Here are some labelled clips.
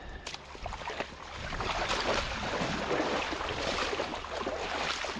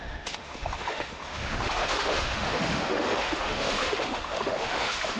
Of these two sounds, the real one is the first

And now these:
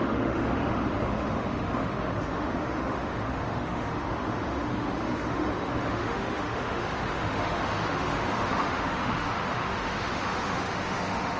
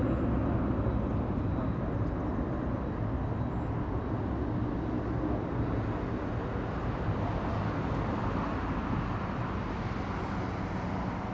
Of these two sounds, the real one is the second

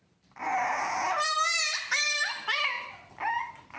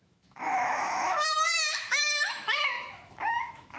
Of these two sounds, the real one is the first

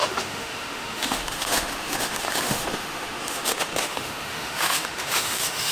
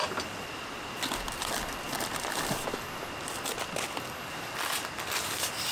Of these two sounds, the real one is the second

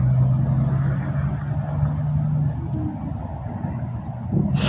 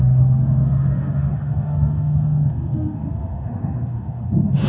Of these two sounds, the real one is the first